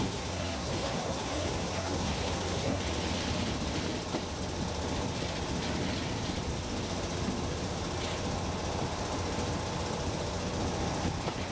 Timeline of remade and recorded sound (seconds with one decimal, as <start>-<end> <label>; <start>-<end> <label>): 0.0-2.8 remade; 2.8-11.5 recorded